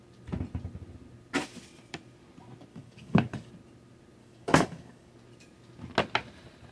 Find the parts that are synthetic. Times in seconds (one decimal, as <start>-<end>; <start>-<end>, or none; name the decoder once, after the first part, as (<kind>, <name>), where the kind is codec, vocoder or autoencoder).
2.7-3.5 (codec, DAC); 4.2-5.1